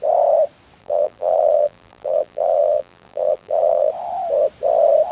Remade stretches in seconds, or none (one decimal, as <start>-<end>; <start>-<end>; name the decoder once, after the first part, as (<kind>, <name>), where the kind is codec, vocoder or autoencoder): 0.8-3.9 (vocoder, BigVGAN v2)